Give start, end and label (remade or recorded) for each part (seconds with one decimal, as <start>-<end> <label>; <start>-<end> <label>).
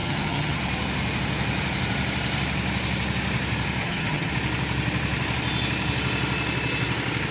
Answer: 0.0-0.6 remade; 0.6-3.8 recorded; 3.8-4.3 remade; 4.3-7.3 recorded